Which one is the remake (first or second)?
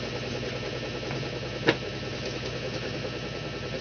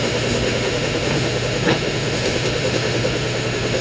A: second